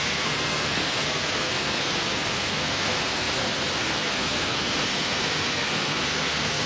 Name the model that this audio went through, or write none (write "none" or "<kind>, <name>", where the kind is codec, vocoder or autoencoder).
codec, SNAC